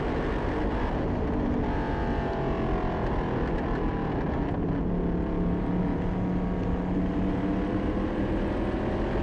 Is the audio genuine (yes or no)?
yes